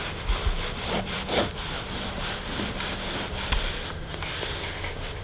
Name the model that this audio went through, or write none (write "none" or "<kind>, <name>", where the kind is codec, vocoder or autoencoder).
none